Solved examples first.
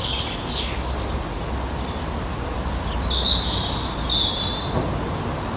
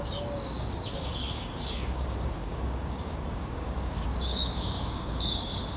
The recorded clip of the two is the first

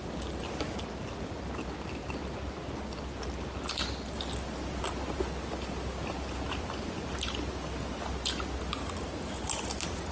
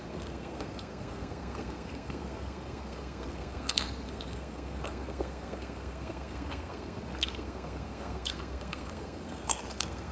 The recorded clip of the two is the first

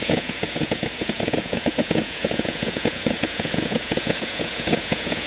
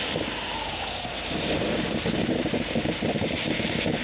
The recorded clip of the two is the second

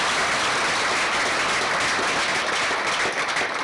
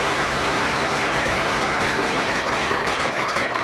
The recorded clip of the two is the first